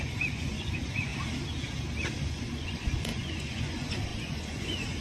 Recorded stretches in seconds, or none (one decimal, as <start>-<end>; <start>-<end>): 1.1-2.2